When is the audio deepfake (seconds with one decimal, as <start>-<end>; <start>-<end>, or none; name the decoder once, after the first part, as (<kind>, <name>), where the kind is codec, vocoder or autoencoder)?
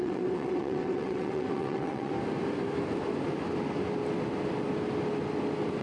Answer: 0.0-2.1 (vocoder, WaveNeXt)